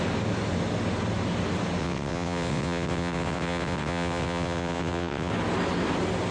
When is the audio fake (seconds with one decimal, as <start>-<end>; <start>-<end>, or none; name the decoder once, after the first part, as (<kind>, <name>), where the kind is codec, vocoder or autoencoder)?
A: 1.8-5.3 (vocoder, WaveNeXt)